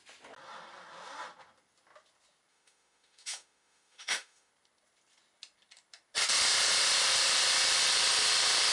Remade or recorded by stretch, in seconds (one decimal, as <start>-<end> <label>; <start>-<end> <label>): 0.0-2.5 recorded; 2.5-4.5 remade; 4.5-8.7 recorded